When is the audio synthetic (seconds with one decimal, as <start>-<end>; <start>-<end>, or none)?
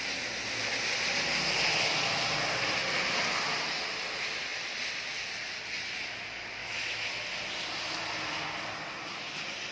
6.6-7.1